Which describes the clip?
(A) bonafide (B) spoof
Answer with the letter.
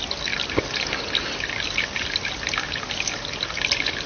A